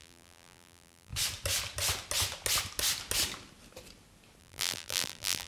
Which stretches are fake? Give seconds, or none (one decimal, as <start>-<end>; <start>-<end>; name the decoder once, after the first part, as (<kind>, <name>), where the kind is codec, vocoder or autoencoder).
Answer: 0.0-1.1 (vocoder, BigVGAN v2); 4.4-5.5